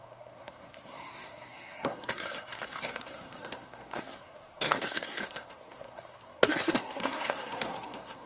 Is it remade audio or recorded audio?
remade